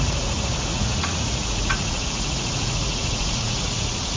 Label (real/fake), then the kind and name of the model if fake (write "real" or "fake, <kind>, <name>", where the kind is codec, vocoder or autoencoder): fake, vocoder, Vocos